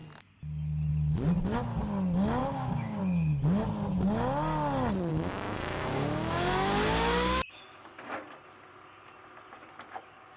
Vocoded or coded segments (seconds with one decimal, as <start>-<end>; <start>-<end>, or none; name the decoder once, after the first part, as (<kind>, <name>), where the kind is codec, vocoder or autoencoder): 2.4-3.0 (codec, DAC); 5.1-8.1